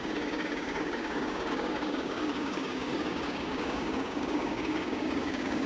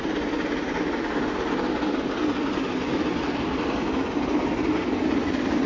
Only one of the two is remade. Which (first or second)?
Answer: first